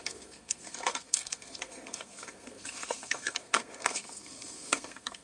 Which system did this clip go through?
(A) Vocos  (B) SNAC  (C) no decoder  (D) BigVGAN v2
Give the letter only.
B